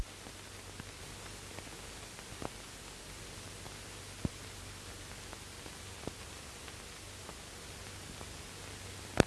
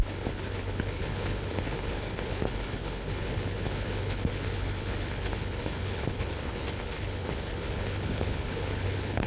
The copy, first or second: second